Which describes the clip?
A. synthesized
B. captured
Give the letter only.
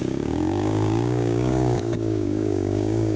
A